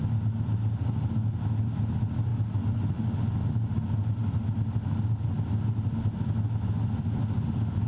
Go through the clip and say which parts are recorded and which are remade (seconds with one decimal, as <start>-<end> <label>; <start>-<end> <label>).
0.0-7.9 recorded